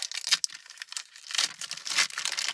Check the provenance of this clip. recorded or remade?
recorded